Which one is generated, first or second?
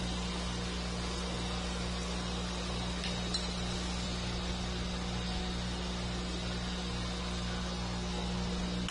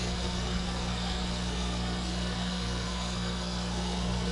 second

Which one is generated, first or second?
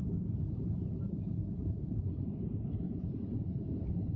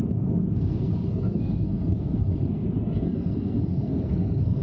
second